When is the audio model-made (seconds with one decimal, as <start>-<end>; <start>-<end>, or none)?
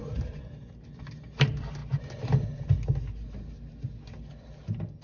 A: none